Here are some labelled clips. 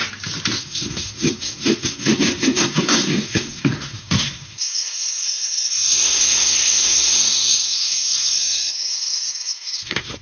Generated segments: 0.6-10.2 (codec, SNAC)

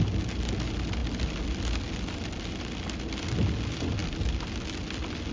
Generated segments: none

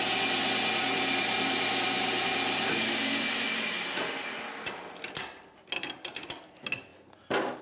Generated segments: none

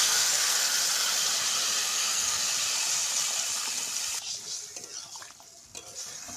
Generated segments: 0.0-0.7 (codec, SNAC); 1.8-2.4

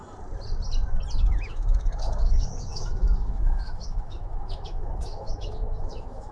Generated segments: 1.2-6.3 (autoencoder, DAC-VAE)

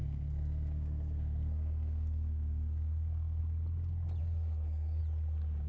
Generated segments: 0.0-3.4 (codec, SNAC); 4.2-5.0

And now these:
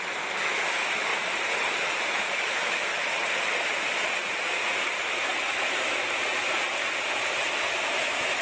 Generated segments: 0.0-1.1 (autoencoder, DAC-VAE); 2.1-3.0; 7.6-8.4